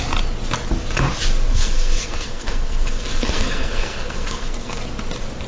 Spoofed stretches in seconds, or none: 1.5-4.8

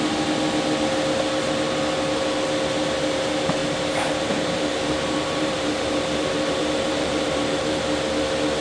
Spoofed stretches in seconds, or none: 3.6-7.8

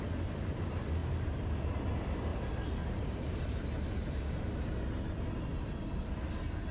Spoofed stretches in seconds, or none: 1.0-1.8; 2.3-4.2

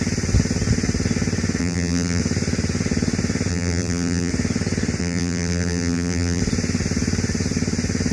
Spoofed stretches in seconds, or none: 1.6-2.2; 3.5-4.3; 5.0-6.4

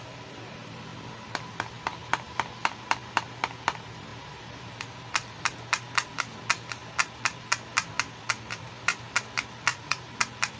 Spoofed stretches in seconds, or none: 4.1-4.7; 9.7-10.2

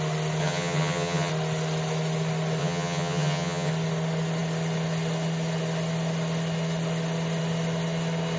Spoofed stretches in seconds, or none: 0.4-1.3; 2.6-3.7

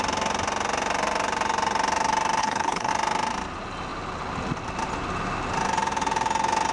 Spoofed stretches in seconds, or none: 2.4-2.9

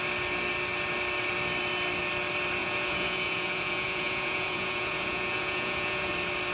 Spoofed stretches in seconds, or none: 2.6-6.1